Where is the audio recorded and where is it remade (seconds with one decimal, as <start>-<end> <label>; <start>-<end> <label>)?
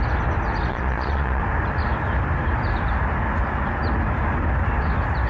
0.0-0.7 recorded; 0.7-1.4 remade; 1.4-5.3 recorded